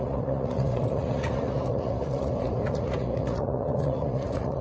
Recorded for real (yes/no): no